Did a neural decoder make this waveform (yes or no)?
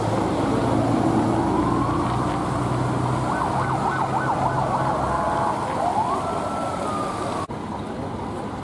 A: no